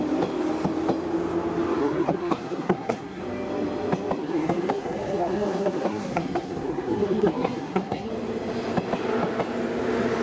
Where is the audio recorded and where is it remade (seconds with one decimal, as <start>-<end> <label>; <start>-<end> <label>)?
0.0-1.8 recorded; 1.8-3.2 remade; 3.2-4.2 recorded; 4.2-8.1 remade; 8.1-10.2 recorded